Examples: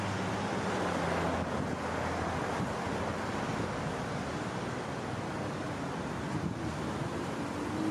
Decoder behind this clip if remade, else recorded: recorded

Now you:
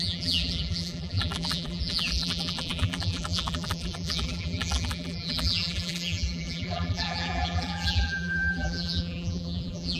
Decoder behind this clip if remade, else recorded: remade, vocoder, BigVGAN v2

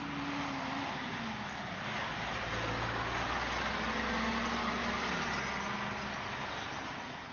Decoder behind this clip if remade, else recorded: recorded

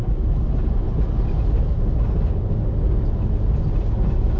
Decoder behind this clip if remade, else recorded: recorded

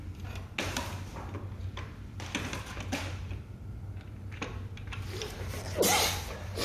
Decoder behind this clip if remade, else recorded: recorded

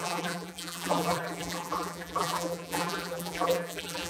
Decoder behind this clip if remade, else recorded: remade, vocoder, BigVGAN v2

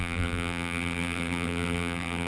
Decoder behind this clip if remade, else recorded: remade, vocoder, BigVGAN v2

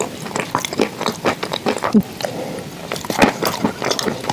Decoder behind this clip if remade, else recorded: recorded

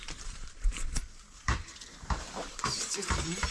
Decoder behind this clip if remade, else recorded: remade, vocoder, BigVGAN v2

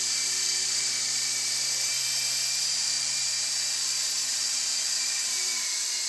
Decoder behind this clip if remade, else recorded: remade, vocoder, BigVGAN v2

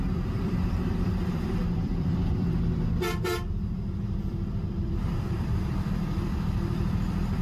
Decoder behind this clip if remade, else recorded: remade, vocoder, BigVGAN v2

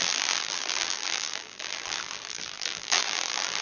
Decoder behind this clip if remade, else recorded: remade, vocoder, BigVGAN v2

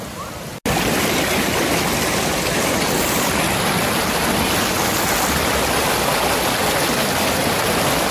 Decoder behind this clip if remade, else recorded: recorded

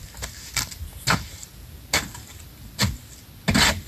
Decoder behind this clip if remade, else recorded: recorded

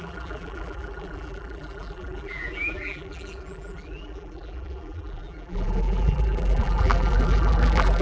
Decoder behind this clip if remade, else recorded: remade, vocoder, BigVGAN v2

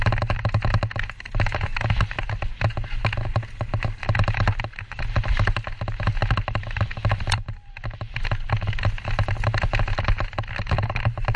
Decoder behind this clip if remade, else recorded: recorded